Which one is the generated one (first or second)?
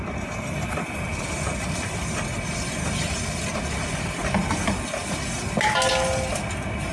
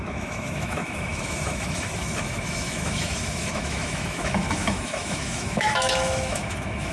second